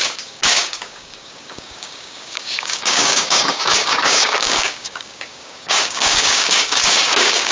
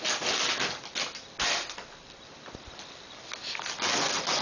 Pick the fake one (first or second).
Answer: first